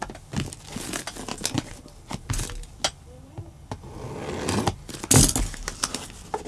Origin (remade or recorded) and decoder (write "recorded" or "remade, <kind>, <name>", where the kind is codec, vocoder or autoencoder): recorded